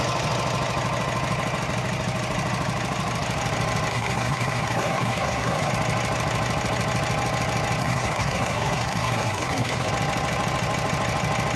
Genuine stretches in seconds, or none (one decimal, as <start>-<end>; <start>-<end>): 0.0-3.9; 5.7-7.8; 9.9-11.6